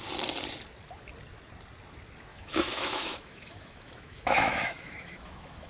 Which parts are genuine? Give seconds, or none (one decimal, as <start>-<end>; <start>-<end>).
0.0-2.3